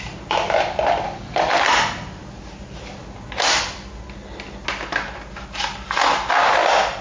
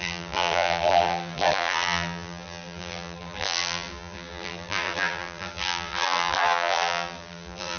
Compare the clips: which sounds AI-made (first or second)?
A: second